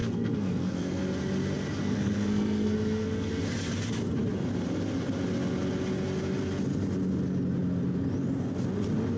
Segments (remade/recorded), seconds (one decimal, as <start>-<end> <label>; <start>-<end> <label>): 0.0-1.0 remade; 1.0-1.8 recorded; 1.8-3.5 remade; 3.5-9.2 recorded